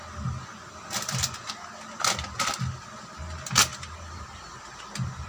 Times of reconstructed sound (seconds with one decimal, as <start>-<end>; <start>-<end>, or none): 3.7-4.8